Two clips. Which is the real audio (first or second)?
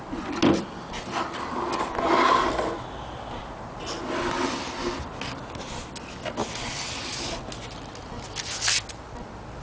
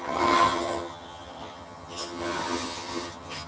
first